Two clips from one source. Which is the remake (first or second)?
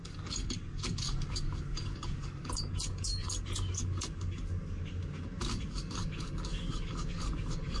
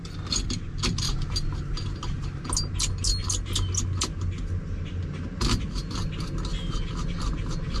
first